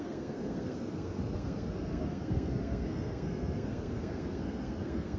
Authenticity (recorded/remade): remade